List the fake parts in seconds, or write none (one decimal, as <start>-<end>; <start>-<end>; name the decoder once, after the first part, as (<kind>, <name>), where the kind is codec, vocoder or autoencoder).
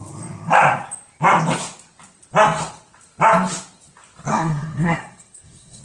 4.3-5.8 (codec, SNAC)